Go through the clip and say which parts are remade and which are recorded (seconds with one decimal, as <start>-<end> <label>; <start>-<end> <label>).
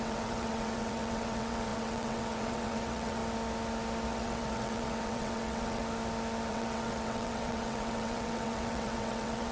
0.0-3.2 remade; 3.2-4.1 recorded; 4.1-5.8 remade; 5.8-6.5 recorded; 6.5-9.5 remade